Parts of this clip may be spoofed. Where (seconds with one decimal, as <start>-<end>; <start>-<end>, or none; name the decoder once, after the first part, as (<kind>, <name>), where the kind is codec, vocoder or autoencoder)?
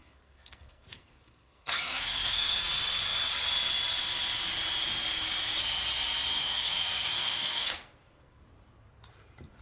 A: 0.0-2.6 (codec, SNAC); 6.3-8.4